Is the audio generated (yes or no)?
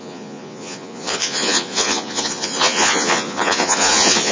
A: yes